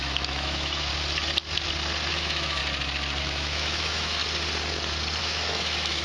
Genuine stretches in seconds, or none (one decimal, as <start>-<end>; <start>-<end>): 0.9-2.1; 2.6-3.2; 4.2-5.2